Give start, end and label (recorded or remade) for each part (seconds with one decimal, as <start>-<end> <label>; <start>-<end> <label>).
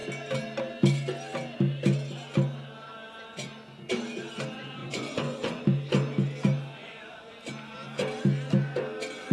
0.0-4.8 recorded; 4.8-5.6 remade; 5.6-6.8 recorded; 6.8-7.3 remade; 7.3-9.3 recorded